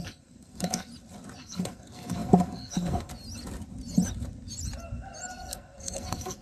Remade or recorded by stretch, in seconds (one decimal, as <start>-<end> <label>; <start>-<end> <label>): 0.0-0.9 remade; 0.9-1.4 recorded; 1.4-3.1 remade; 3.1-5.3 recorded; 5.3-6.4 remade